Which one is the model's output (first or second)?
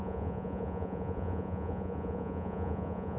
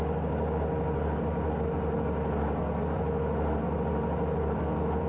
first